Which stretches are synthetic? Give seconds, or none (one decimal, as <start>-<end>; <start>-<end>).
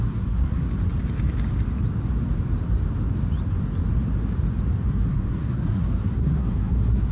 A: 0.0-0.6; 4.9-7.1